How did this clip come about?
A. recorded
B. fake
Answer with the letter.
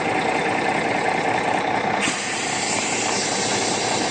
A